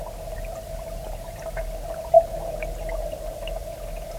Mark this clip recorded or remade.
recorded